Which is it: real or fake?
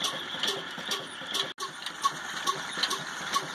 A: real